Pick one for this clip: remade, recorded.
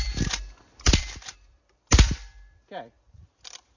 remade